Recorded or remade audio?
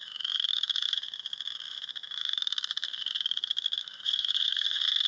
remade